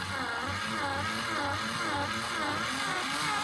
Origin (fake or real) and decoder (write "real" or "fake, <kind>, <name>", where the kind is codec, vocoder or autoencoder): real